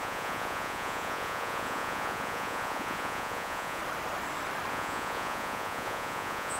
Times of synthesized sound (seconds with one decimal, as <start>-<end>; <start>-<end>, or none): 0.0-3.8; 4.7-6.6